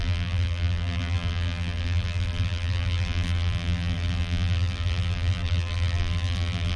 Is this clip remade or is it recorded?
remade